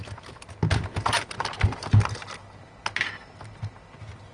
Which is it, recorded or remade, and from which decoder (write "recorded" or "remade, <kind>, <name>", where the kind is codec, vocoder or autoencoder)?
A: recorded